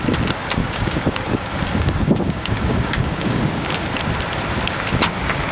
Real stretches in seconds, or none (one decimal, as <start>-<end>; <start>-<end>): 0.0-0.6; 3.9-5.5